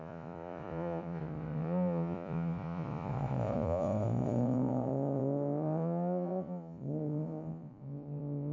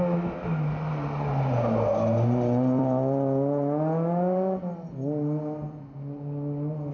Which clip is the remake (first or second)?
first